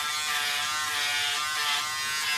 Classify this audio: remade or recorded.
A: recorded